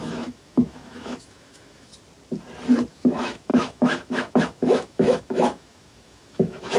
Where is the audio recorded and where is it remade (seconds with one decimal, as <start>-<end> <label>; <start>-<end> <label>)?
0.0-1.9 remade; 1.9-2.9 recorded; 2.9-6.8 remade

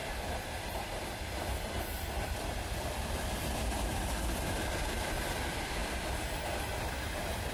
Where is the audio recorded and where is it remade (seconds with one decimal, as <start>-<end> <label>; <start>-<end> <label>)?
0.0-5.8 remade; 5.8-7.5 recorded

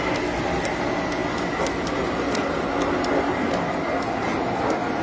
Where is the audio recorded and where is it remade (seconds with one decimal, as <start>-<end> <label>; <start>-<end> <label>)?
0.0-5.0 recorded

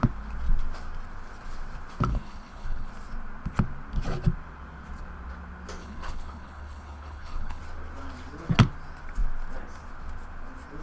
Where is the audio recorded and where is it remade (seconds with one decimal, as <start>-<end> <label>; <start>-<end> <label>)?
0.0-2.1 recorded; 2.1-2.9 remade; 2.9-5.8 recorded; 5.8-7.6 remade; 7.6-10.8 recorded